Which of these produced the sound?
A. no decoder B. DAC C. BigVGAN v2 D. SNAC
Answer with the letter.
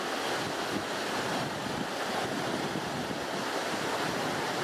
A